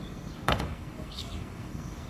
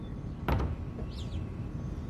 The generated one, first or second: first